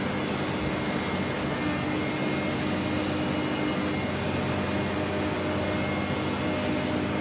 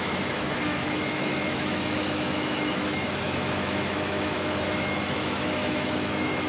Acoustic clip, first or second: first